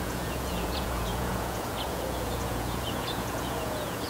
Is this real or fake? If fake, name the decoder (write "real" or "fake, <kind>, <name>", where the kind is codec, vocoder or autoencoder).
fake, vocoder, Vocos